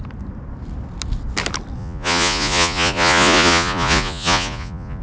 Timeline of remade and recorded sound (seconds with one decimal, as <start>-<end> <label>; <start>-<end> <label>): 0.0-1.8 recorded; 1.8-5.0 remade